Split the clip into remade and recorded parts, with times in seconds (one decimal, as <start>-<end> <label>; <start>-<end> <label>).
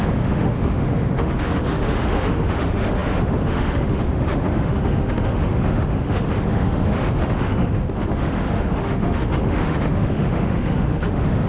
0.0-11.5 remade